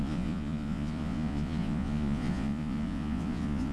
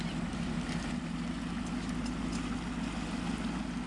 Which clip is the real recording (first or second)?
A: second